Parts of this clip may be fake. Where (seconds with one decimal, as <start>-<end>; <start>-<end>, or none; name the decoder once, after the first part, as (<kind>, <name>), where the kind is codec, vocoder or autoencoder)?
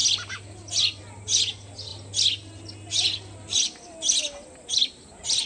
none